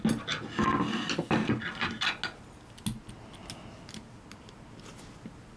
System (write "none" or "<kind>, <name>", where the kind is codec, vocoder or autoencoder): none